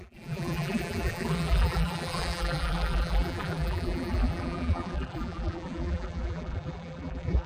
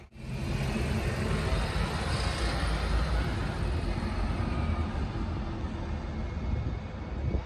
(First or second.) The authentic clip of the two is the second